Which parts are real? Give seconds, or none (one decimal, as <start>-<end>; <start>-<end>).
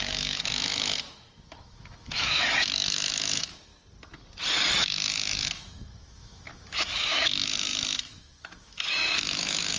3.7-4.8